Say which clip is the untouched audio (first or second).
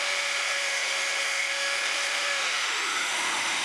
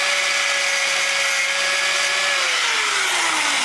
second